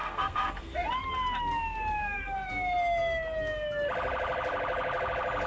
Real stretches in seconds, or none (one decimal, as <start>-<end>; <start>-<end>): 0.9-2.0; 2.5-5.5